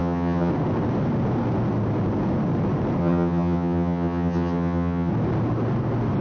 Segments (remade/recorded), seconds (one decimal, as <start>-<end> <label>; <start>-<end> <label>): 0.0-0.5 remade; 0.5-3.0 recorded; 3.0-5.1 remade; 5.1-6.2 recorded